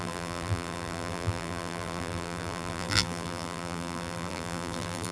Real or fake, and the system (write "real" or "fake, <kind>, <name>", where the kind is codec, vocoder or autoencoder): fake, vocoder, BigVGAN v2